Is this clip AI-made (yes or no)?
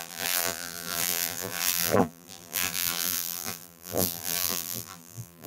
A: yes